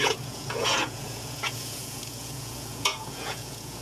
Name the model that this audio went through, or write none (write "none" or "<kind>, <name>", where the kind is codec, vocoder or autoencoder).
vocoder, Vocos